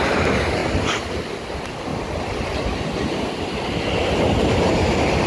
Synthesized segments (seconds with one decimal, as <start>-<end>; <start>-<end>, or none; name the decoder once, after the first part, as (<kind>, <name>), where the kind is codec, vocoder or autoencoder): none